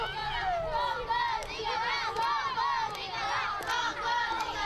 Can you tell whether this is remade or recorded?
recorded